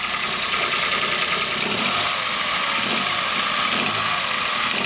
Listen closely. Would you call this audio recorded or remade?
recorded